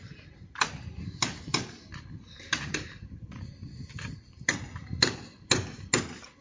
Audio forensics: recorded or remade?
recorded